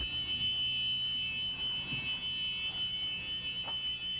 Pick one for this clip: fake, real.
real